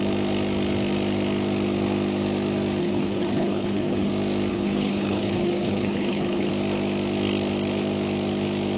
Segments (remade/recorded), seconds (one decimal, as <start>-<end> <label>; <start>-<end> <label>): 0.0-2.8 recorded; 2.8-4.1 remade; 4.1-4.5 recorded; 4.5-6.5 remade; 6.5-8.8 recorded